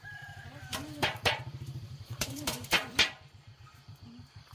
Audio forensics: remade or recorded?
remade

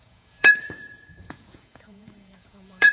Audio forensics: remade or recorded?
remade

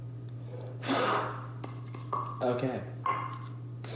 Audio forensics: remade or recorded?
recorded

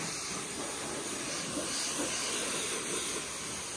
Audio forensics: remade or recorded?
recorded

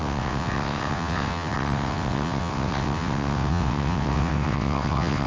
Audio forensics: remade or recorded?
remade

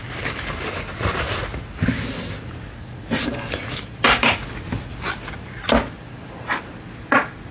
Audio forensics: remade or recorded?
recorded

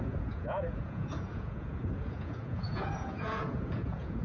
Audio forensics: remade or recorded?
remade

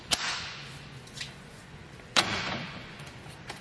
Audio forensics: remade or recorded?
remade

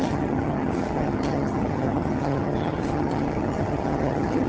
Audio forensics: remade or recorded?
remade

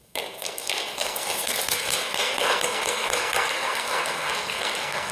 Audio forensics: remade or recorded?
remade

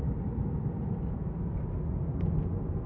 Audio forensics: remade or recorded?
recorded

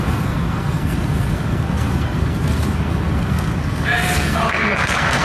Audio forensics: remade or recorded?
remade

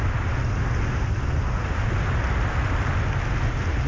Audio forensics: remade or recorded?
recorded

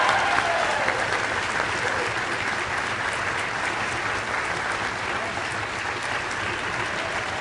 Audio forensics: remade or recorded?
remade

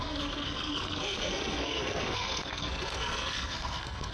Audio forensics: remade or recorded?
remade